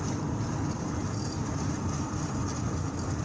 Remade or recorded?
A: recorded